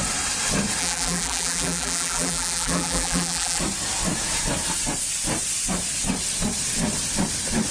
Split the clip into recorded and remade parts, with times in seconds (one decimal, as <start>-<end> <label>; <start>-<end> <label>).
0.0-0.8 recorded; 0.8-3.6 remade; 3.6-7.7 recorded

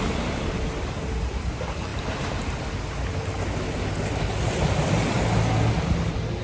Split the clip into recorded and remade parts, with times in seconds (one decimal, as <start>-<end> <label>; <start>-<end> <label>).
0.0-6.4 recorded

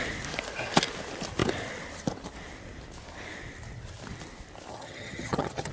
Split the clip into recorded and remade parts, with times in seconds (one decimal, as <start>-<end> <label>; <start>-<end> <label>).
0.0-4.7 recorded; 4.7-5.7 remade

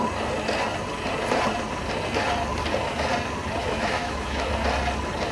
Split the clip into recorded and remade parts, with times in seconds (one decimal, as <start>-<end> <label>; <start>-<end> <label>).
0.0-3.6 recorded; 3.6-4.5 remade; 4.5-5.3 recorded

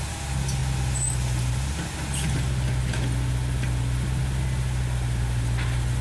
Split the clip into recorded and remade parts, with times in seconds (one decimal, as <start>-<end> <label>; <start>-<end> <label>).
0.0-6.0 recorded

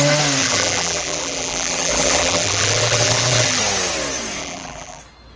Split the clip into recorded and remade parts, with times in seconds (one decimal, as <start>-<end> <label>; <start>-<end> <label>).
0.0-0.4 recorded; 0.4-3.6 remade; 3.6-4.4 recorded; 4.4-5.0 remade; 5.0-5.4 recorded

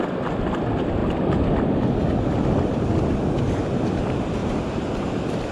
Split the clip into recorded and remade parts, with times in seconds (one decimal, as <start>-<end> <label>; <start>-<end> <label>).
0.0-4.4 recorded; 4.4-5.5 remade